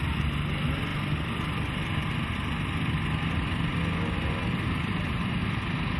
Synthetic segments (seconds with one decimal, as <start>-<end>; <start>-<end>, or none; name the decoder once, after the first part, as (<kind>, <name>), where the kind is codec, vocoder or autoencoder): none